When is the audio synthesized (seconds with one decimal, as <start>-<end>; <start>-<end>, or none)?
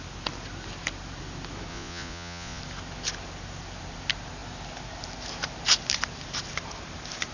1.7-2.6